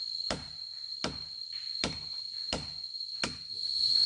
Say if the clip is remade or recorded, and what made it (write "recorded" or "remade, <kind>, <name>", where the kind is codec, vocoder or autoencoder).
remade, vocoder, BigVGAN v2